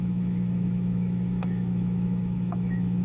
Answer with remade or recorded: remade